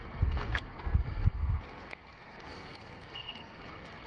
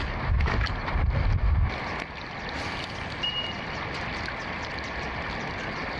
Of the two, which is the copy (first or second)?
first